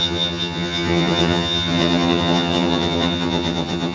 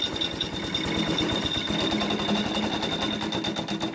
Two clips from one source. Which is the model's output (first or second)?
first